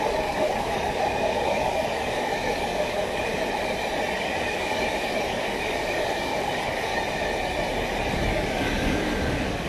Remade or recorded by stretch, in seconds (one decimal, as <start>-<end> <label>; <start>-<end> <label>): 0.0-3.3 remade; 3.3-4.2 recorded; 4.2-6.9 remade; 6.9-8.1 recorded; 8.1-9.7 remade